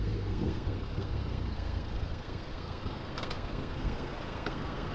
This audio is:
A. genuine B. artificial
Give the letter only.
B